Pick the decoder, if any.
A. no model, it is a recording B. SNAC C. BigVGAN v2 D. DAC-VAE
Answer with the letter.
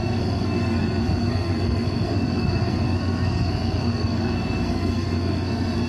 B